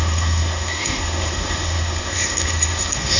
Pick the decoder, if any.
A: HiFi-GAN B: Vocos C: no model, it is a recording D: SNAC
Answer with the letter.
D